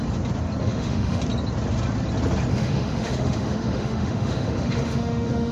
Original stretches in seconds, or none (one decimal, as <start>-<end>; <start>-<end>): 0.0-0.6; 1.2-2.5